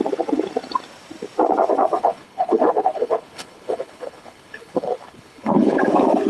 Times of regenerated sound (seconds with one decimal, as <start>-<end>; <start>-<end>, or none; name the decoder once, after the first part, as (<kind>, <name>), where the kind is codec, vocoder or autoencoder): 2.0-5.8 (codec, HILCodec)